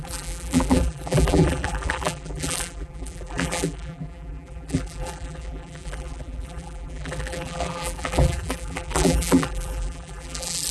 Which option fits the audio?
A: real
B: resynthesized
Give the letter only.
B